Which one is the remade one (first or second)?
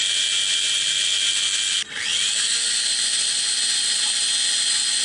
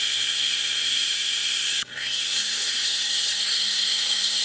second